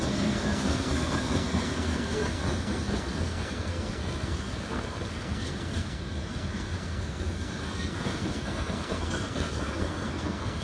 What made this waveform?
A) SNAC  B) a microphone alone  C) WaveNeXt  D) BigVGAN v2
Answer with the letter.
A